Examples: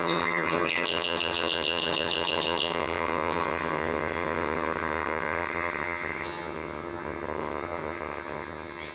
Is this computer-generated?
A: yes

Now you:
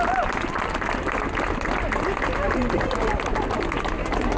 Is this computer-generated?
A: no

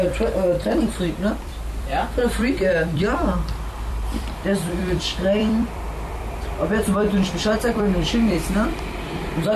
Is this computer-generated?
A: yes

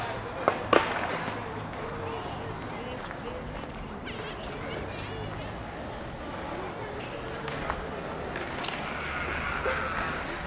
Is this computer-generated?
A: no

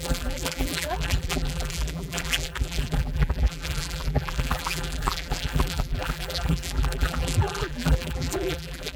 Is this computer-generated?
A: yes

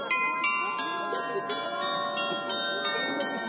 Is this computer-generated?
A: no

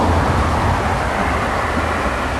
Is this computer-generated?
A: no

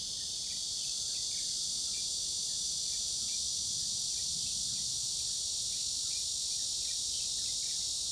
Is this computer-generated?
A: yes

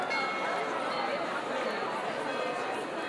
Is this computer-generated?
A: no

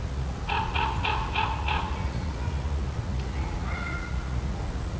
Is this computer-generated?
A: yes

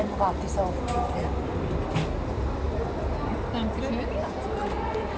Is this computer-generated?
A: no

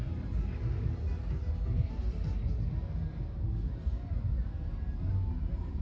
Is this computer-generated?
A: no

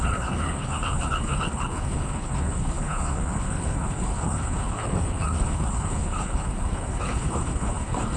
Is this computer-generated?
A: yes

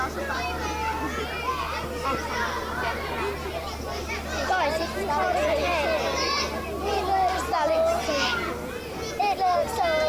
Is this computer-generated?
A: no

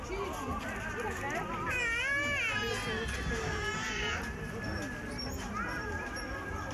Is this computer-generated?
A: no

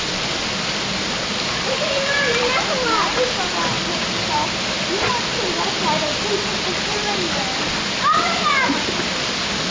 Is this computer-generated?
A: no